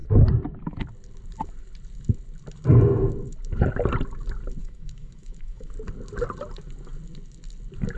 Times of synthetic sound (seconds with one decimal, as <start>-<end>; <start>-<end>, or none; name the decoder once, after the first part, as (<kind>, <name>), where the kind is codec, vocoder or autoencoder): 4.6-5.7 (autoencoder, DAC-VAE)